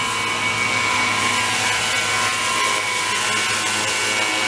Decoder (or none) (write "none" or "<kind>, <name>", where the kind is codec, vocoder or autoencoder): none